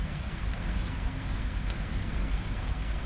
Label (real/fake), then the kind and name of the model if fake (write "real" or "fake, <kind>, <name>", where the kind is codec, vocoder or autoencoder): fake, codec, SNAC